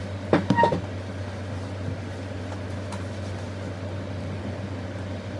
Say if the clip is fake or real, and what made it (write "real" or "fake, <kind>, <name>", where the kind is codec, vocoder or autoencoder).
real